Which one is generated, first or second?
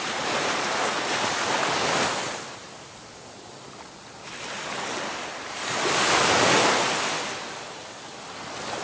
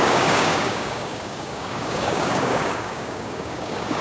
second